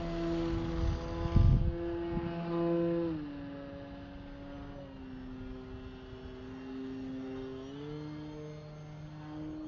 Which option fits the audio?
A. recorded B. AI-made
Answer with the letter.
A